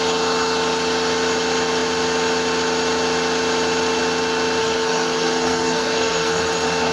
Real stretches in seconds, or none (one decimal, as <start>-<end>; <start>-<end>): 0.0-4.6; 6.5-6.9